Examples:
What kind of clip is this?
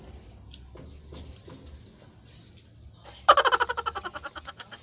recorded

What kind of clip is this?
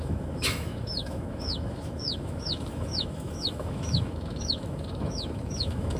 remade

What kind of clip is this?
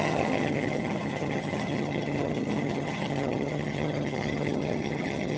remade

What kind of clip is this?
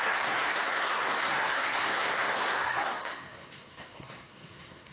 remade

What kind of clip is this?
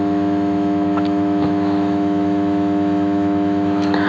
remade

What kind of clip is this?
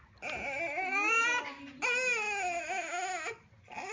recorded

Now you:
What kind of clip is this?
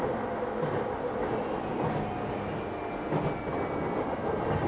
recorded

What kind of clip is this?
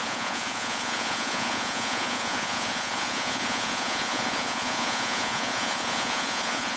remade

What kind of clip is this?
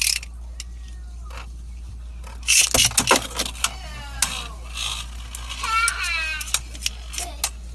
recorded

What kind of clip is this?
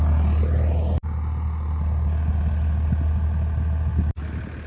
recorded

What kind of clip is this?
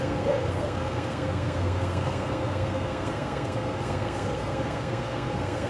remade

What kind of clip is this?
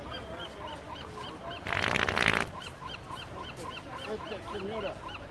recorded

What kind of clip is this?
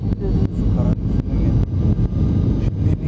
recorded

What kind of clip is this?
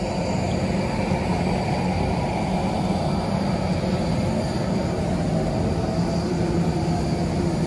recorded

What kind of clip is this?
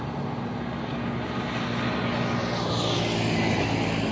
recorded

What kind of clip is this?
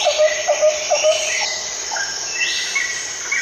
recorded